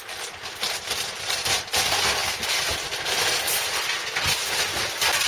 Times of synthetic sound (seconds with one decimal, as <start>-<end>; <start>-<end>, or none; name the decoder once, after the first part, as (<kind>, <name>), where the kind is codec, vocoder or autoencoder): none